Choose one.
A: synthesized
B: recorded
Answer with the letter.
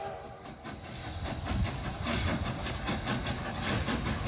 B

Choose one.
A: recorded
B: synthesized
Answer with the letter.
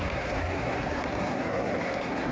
B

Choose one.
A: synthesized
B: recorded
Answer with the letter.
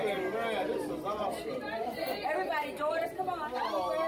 B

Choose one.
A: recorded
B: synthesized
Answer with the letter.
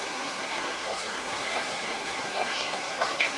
B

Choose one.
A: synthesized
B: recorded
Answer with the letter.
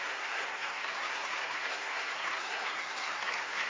A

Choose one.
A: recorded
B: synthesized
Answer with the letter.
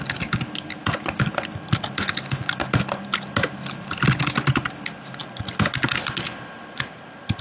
A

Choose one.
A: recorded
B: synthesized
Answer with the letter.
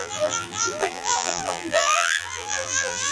B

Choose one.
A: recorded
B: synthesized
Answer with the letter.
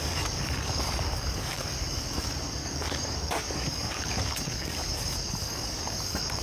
B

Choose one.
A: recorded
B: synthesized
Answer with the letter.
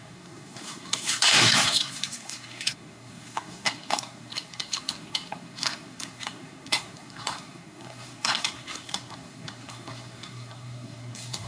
B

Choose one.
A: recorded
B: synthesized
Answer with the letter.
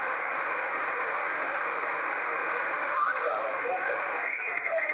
B